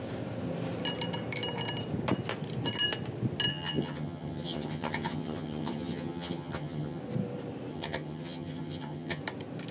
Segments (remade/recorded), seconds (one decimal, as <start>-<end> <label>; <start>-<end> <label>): 0.0-3.5 recorded; 3.5-7.0 remade; 7.0-7.7 recorded; 7.7-9.2 remade; 9.2-9.7 recorded